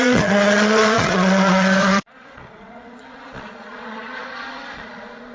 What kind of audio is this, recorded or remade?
remade